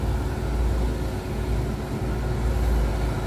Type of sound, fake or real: real